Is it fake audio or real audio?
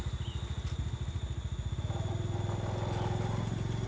real